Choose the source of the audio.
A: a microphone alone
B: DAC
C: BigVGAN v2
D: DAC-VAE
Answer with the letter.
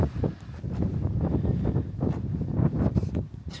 A